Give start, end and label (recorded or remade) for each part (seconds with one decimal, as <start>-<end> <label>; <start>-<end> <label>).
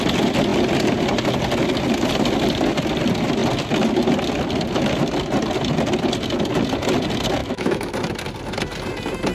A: 0.0-7.4 recorded; 7.4-7.9 remade; 7.9-9.3 recorded